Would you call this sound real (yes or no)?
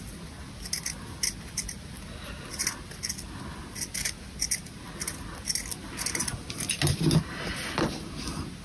yes